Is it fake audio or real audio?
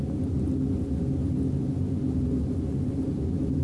real